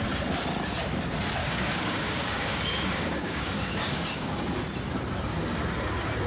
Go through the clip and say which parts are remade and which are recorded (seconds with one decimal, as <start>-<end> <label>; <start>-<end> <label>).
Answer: 0.0-1.4 recorded; 1.4-4.3 remade; 4.3-6.3 recorded